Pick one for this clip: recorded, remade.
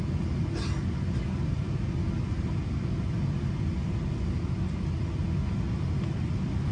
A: recorded